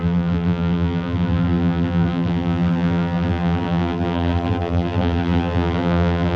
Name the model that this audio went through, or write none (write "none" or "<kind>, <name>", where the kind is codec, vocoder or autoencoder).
vocoder, BigVGAN v2